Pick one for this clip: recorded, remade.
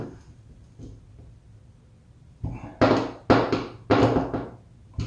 recorded